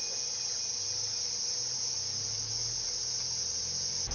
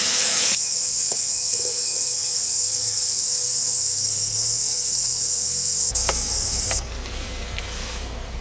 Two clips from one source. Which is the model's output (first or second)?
second